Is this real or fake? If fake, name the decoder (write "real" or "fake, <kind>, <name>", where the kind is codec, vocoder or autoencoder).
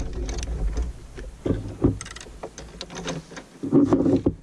real